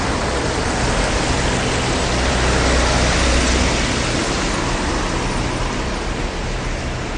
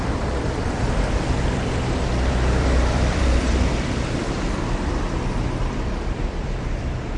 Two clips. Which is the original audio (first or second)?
first